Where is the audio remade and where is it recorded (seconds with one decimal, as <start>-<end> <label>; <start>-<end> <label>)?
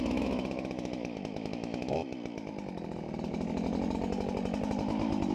0.0-2.0 remade; 2.0-5.3 recorded